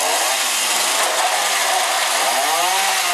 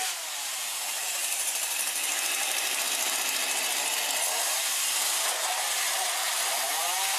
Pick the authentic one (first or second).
first